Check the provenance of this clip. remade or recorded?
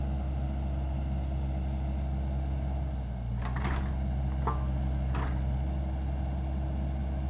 recorded